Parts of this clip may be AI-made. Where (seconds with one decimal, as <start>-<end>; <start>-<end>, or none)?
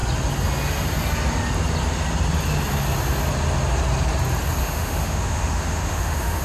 4.6-6.4